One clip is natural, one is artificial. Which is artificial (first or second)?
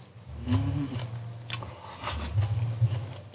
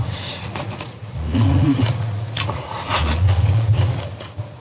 second